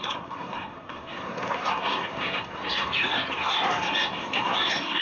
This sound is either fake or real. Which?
fake